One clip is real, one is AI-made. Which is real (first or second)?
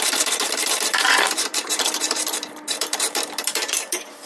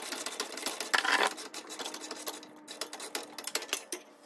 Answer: second